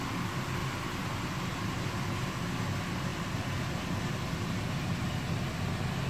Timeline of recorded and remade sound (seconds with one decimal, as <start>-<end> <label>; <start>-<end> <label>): 0.0-6.1 recorded